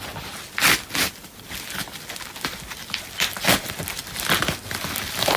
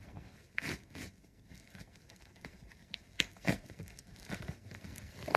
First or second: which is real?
first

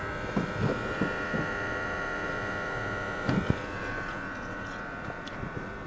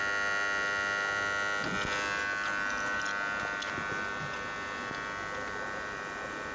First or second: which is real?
second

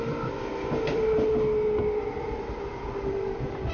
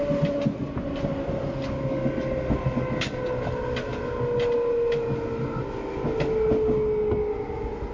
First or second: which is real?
second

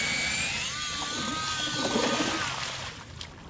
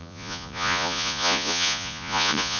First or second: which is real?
first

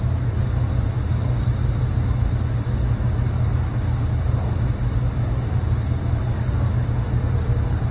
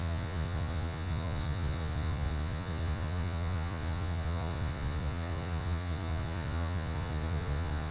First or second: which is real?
first